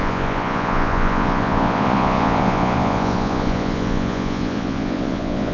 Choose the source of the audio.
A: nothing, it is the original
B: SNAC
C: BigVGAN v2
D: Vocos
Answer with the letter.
D